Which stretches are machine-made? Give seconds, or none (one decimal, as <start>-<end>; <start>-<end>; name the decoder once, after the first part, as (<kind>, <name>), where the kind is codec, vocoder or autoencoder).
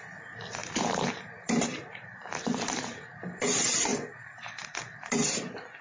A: 0.6-3.0 (vocoder, BigVGAN v2)